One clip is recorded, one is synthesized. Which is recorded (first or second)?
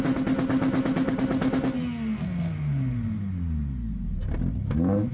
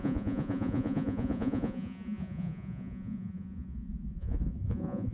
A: first